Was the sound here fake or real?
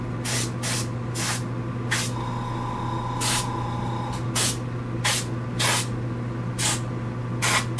real